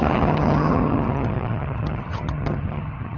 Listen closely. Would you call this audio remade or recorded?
remade